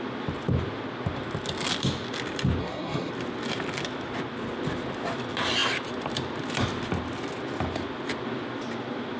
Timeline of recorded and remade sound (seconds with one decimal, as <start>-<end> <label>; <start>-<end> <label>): 0.0-2.6 recorded; 2.6-3.1 remade; 3.1-9.2 recorded